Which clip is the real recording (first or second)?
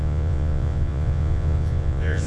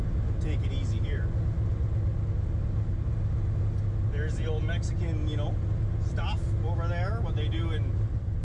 second